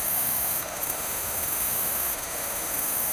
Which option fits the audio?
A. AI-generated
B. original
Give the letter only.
A